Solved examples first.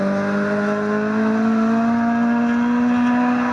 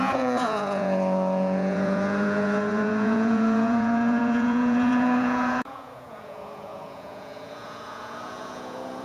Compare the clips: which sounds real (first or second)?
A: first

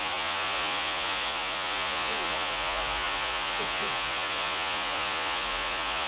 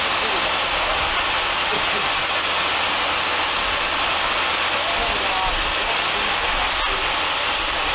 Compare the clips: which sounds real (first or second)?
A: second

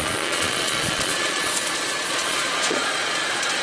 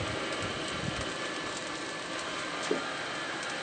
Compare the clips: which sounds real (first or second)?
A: second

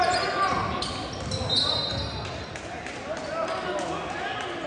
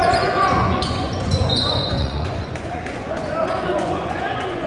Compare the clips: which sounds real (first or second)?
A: first